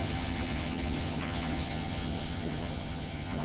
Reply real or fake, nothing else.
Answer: fake